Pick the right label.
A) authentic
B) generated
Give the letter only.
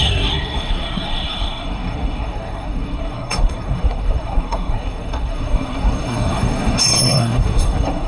B